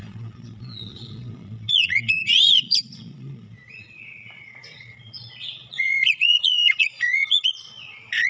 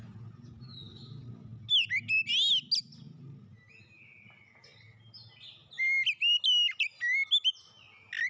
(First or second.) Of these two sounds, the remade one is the first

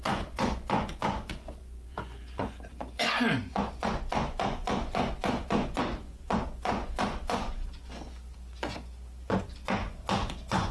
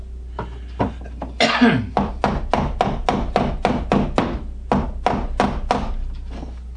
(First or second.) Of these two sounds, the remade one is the first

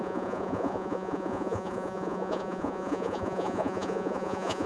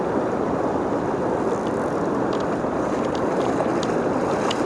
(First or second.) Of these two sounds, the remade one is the first